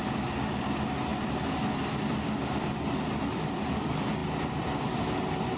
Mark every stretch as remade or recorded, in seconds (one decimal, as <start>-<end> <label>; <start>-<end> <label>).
0.0-5.6 recorded